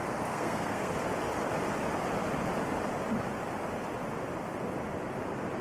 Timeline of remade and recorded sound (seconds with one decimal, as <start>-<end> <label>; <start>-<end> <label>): 0.0-0.9 remade; 0.9-5.6 recorded